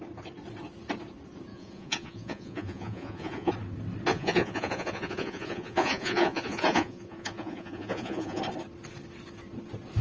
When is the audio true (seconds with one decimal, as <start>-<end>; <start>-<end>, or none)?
0.0-1.5; 3.5-4.1; 8.4-10.0